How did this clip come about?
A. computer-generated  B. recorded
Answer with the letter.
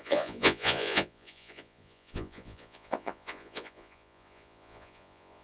A